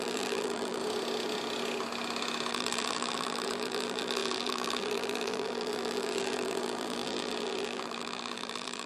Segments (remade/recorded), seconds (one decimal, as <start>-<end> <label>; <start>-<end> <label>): 0.0-0.8 remade; 0.8-2.5 recorded; 2.5-8.9 remade